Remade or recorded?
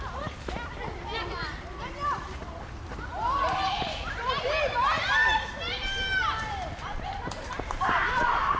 remade